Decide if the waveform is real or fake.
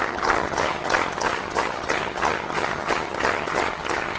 fake